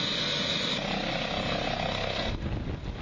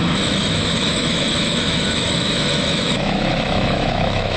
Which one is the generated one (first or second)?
second